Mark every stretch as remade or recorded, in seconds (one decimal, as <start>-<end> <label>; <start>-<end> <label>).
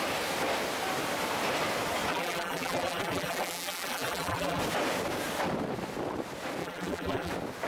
0.0-2.1 recorded; 2.1-4.6 remade; 4.6-6.6 recorded; 6.6-7.3 remade; 7.3-7.7 recorded